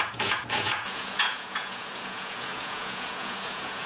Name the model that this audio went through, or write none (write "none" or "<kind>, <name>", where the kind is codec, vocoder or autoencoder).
vocoder, Vocos